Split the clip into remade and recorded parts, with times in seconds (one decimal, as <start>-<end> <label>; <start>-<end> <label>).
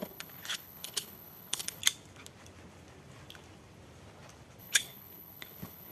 0.0-1.8 remade; 1.8-4.6 recorded; 4.6-5.9 remade